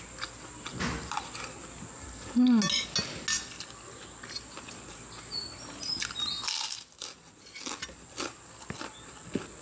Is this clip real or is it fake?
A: real